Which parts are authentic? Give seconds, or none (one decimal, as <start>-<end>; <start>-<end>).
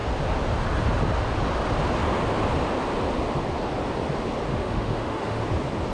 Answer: 0.0-4.5; 5.4-5.9